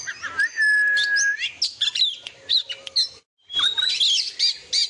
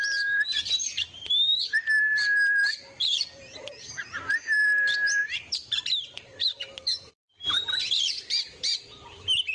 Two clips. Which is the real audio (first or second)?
first